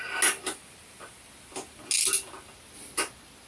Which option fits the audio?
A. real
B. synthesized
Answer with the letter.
A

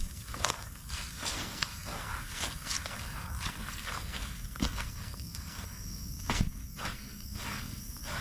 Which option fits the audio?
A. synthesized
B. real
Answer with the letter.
A